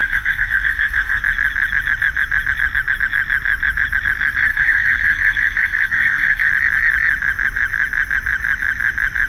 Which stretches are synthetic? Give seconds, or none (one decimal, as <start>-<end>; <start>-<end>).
0.0-1.2; 4.5-6.5